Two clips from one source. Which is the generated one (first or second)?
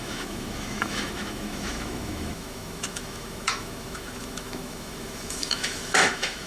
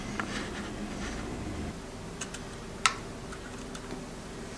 first